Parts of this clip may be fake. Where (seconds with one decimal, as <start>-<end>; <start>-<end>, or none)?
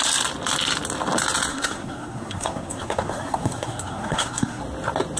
1.5-4.6